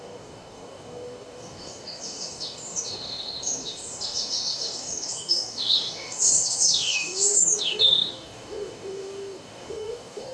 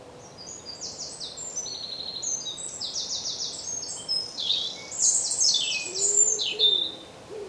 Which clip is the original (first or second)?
second